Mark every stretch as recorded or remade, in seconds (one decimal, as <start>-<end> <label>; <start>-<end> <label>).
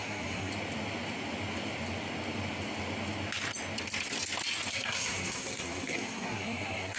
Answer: 0.0-0.5 remade; 0.5-4.7 recorded; 4.7-7.0 remade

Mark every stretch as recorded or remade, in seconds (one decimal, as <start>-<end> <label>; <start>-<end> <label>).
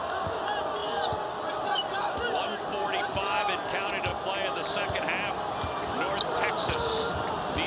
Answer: 0.0-7.7 recorded